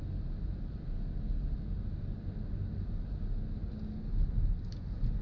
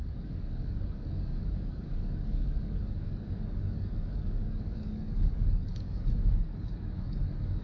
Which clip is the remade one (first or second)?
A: second